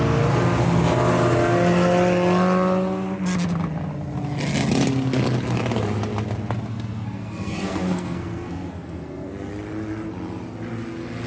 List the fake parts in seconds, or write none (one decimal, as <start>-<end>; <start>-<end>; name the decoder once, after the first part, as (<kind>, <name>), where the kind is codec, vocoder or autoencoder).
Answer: 6.7-9.5 (codec, SNAC)